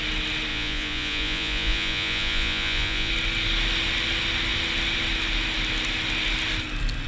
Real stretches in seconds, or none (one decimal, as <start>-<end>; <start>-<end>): 0.0-0.5; 3.1-7.1